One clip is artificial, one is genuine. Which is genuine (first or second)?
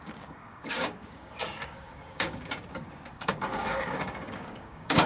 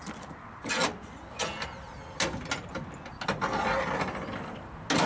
second